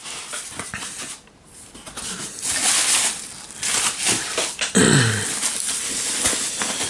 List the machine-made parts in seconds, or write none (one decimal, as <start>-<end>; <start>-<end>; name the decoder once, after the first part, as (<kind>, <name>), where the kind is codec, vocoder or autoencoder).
none